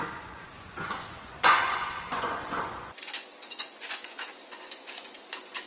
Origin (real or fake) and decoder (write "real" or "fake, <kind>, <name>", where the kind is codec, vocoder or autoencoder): fake, vocoder, Vocos